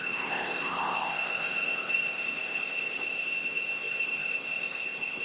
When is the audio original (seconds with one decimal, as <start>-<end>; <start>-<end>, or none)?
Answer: none